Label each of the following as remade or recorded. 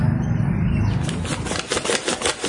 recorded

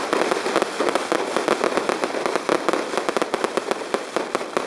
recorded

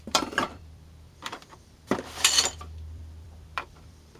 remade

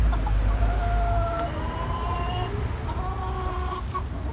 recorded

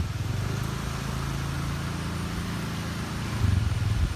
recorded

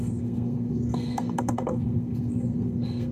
remade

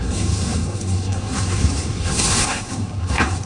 remade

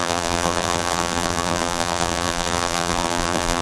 remade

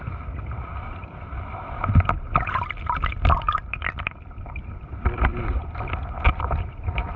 recorded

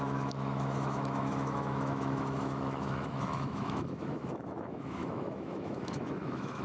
remade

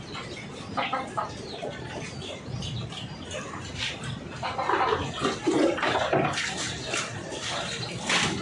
recorded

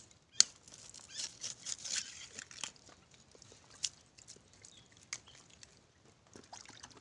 recorded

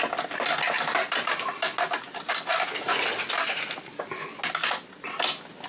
recorded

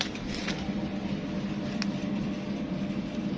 recorded